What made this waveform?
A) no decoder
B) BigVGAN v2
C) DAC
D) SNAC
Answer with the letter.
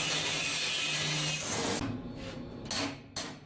A